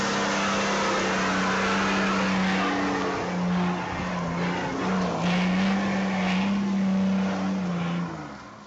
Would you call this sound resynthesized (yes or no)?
no